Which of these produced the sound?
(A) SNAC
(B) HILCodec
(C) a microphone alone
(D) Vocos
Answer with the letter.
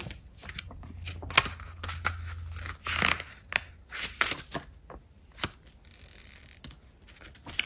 C